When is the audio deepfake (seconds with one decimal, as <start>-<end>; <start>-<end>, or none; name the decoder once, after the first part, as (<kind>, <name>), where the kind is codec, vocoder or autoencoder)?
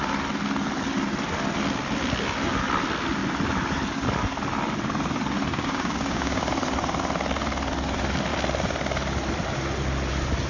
5.5-6.5 (codec, DAC)